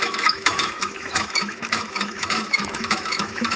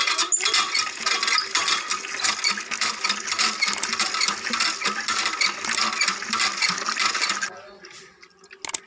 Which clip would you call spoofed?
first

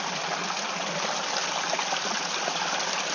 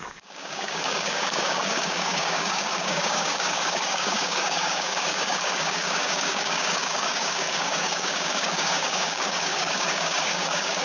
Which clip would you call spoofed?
second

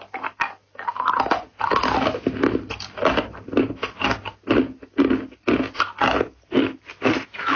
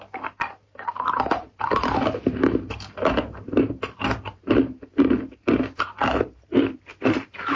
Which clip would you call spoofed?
second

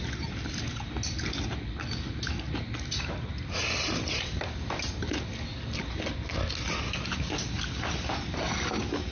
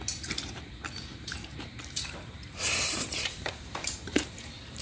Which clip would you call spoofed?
second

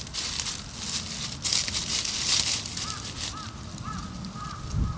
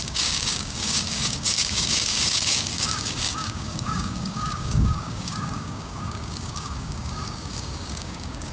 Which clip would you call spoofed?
second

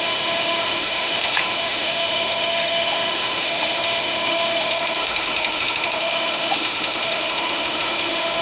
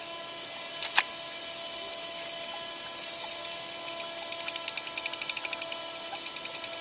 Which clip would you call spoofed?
first